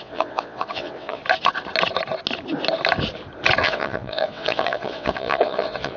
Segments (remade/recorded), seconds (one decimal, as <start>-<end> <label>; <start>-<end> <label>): 0.0-1.2 remade; 1.2-3.6 recorded; 3.6-6.0 remade